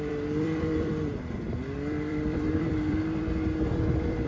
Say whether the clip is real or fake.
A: fake